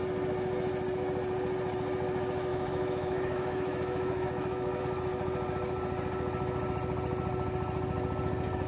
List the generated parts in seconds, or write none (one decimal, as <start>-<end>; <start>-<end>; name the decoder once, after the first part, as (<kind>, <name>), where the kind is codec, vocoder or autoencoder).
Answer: 2.5-4.8 (autoencoder, DAC-VAE)